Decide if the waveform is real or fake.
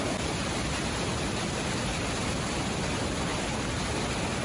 real